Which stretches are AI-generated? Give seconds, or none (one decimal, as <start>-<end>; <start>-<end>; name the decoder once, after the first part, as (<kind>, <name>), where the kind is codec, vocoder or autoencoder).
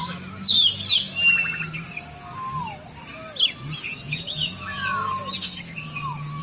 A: 3.8-5.2 (vocoder, Vocos)